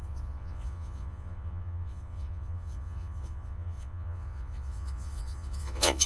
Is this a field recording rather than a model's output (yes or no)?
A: no